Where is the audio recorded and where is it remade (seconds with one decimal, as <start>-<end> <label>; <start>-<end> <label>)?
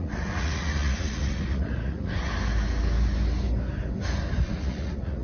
0.0-2.3 remade; 2.3-4.4 recorded; 4.4-5.2 remade